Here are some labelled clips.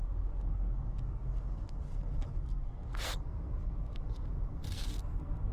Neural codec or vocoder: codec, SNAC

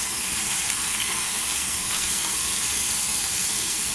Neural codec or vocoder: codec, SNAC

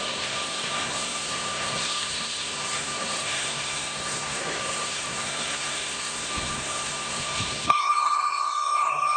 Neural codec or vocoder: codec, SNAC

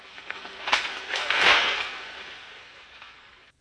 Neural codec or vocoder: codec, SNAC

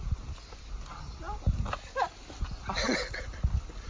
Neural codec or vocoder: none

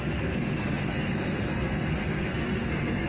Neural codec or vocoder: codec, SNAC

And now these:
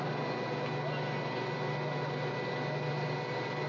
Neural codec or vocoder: none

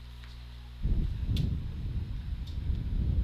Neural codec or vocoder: none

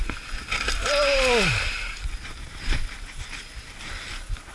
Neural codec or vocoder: none